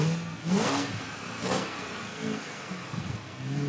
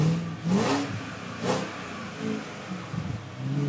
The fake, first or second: first